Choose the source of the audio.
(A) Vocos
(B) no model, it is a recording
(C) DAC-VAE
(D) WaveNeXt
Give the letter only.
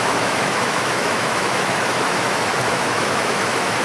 C